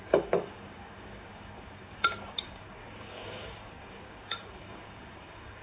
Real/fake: fake